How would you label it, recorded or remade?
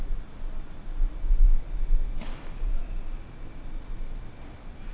recorded